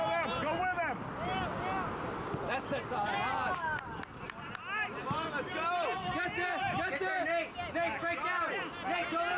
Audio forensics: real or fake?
real